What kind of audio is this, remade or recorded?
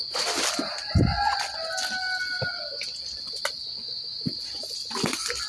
recorded